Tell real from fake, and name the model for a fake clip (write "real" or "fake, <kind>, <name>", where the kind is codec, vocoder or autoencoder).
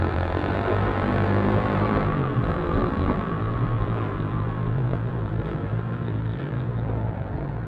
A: fake, vocoder, BigVGAN v2